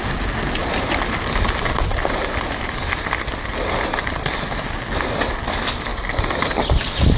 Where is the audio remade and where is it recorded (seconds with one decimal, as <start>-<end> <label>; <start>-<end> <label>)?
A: 0.0-7.2 recorded